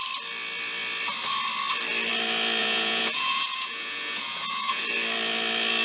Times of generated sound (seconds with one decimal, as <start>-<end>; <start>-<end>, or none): 2.6-4.8